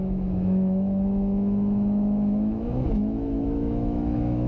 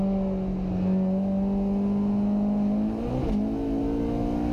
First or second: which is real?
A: second